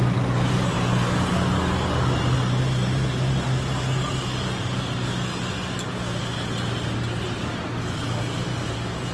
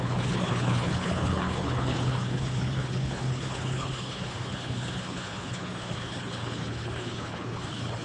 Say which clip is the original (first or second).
first